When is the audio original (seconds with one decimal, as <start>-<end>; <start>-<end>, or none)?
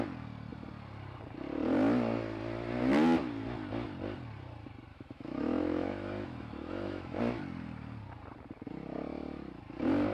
0.0-4.9; 7.2-10.1